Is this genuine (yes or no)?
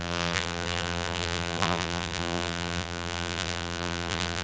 no